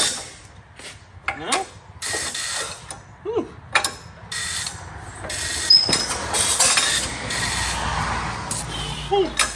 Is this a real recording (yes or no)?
yes